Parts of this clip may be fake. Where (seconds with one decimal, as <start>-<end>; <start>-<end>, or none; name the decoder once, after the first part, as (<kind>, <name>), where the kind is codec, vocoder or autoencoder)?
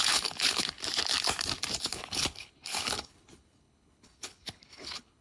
0.0-0.8 (codec, HILCodec); 1.8-5.2